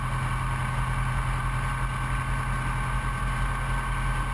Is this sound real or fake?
real